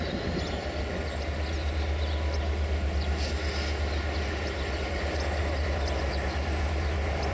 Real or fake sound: real